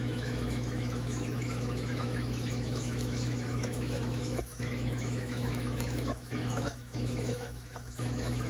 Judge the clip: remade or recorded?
remade